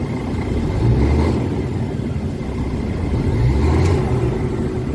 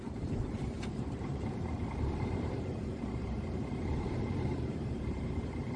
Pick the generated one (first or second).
second